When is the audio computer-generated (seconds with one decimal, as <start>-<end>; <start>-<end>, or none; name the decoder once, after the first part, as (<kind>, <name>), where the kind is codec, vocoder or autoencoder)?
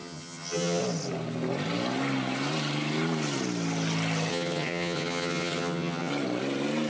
0.0-0.8 (vocoder, HiFi-GAN); 4.3-6.1